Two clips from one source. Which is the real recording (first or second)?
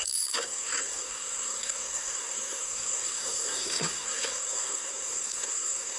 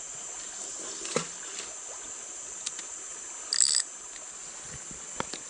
second